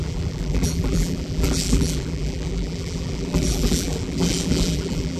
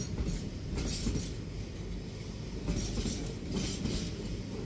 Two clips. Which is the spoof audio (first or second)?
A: first